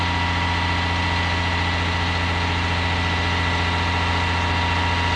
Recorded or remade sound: recorded